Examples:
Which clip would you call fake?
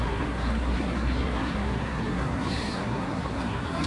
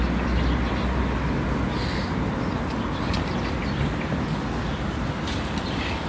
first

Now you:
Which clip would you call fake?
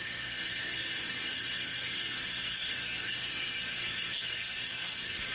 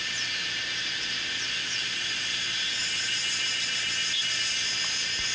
first